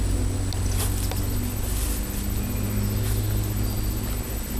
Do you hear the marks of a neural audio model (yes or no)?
no